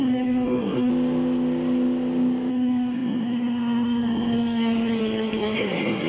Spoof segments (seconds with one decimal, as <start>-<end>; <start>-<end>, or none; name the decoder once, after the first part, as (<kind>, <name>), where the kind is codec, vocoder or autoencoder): 0.0-0.9 (codec, SNAC); 2.5-6.1